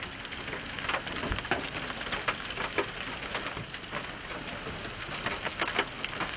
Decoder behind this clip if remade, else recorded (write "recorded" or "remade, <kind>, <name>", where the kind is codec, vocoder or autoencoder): recorded